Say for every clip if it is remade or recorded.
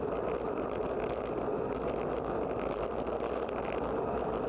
recorded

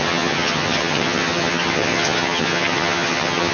remade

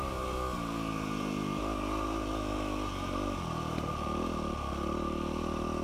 recorded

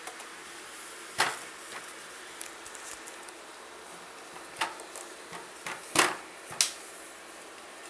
recorded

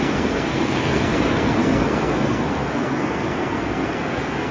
remade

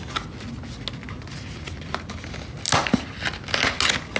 recorded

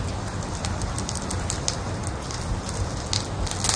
recorded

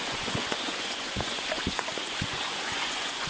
remade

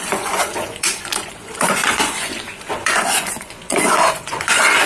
remade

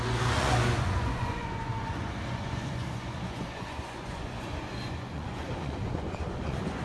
remade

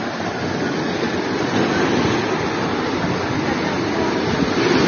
recorded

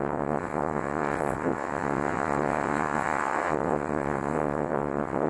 remade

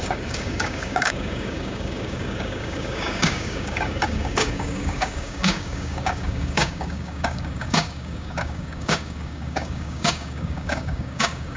remade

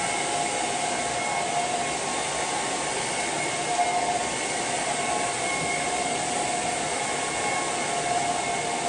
recorded